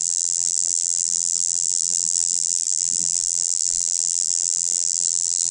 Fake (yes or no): yes